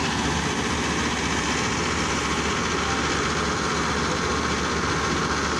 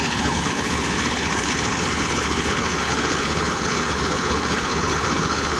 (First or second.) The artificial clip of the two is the second